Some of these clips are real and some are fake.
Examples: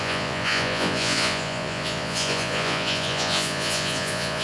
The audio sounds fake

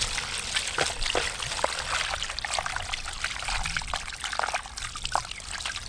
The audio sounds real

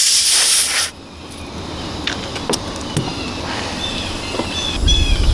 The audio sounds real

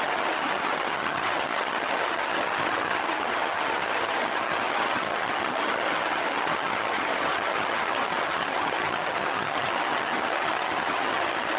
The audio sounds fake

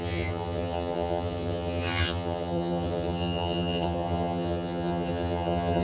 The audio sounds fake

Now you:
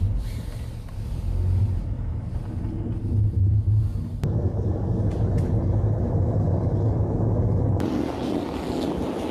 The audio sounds real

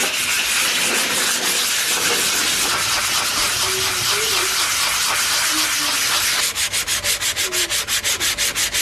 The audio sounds real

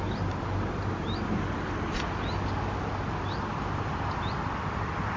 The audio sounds real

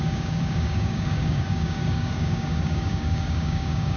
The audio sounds fake